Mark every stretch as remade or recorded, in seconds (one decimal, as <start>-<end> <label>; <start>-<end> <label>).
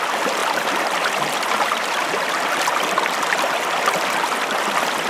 0.0-0.4 recorded; 0.4-3.5 remade; 3.5-5.1 recorded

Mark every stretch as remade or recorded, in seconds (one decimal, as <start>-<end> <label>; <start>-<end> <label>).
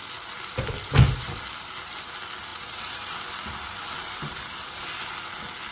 0.0-1.7 remade; 1.7-2.5 recorded; 2.5-5.3 remade; 5.3-5.7 recorded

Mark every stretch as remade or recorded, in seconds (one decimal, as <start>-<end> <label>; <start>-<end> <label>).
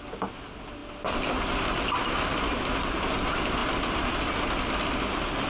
0.0-5.5 recorded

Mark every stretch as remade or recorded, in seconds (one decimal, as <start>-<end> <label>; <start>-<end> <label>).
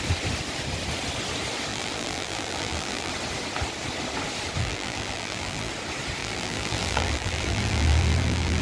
0.0-1.7 recorded; 1.7-3.1 remade; 3.1-4.6 recorded; 4.6-5.7 remade; 5.7-6.2 recorded; 6.2-8.6 remade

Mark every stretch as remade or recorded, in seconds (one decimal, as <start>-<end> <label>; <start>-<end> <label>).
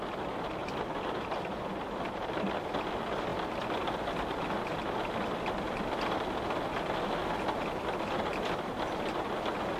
0.0-0.6 recorded; 0.6-1.6 remade; 1.6-9.8 recorded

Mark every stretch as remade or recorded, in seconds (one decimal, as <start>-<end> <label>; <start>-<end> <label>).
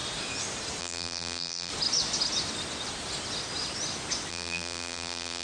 0.0-0.8 recorded; 0.8-1.7 remade; 1.7-4.3 recorded; 4.3-5.4 remade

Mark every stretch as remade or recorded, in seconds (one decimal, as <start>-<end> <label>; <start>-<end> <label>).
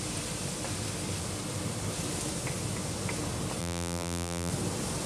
0.0-3.6 recorded; 3.6-4.5 remade; 4.5-5.1 recorded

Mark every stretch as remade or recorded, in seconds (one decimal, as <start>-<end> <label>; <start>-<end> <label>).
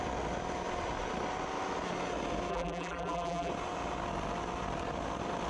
0.0-2.5 recorded; 2.5-3.5 remade; 3.5-5.5 recorded